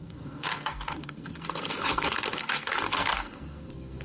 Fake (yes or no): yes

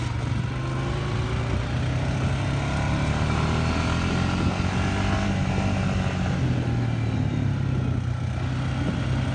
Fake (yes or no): no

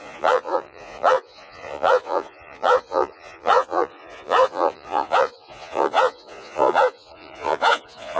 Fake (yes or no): yes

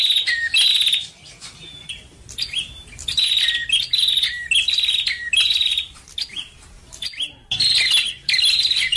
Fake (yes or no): no